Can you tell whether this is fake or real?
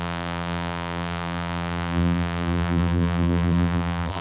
fake